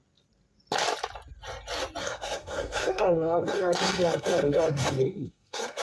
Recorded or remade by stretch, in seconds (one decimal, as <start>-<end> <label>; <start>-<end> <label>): 0.0-2.0 recorded; 2.0-5.8 remade